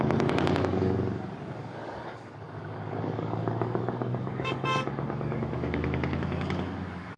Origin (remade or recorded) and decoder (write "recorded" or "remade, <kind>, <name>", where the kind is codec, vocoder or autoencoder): remade, codec, DAC